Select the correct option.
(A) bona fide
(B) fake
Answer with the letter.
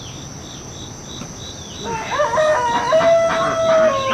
A